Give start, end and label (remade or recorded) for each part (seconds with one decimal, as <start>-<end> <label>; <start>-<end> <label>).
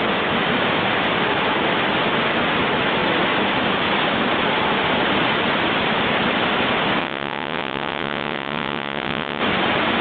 0.0-7.0 recorded; 7.0-9.4 remade; 9.4-10.0 recorded